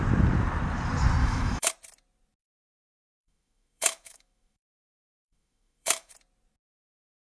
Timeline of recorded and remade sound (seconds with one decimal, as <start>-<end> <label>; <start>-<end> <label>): 0.0-1.2 recorded; 1.2-1.7 remade; 1.7-2.4 recorded; 2.4-6.1 remade; 6.1-7.2 recorded